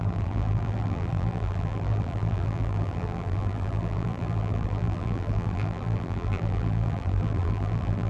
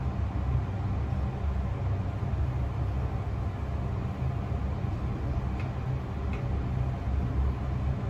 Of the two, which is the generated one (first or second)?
first